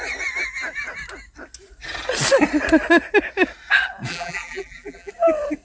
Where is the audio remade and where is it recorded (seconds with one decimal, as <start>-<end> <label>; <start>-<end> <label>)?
0.0-4.1 recorded; 4.1-5.1 remade; 5.1-5.6 recorded